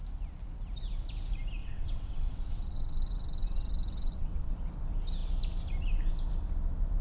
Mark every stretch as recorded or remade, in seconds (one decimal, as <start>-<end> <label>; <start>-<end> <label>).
0.0-1.6 recorded; 1.6-4.5 remade; 4.5-7.0 recorded